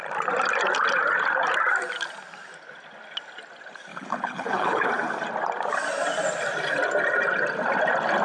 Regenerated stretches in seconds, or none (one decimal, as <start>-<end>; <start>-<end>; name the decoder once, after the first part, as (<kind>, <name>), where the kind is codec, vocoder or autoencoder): 3.9-4.9 (codec, HILCodec)